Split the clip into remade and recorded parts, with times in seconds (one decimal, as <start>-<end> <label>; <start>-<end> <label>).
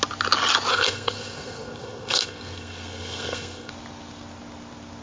0.0-0.7 recorded; 0.7-3.7 remade; 3.7-5.0 recorded